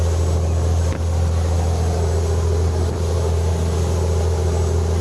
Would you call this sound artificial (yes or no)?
no